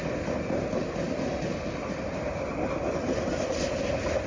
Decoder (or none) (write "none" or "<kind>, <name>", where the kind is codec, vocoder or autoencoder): none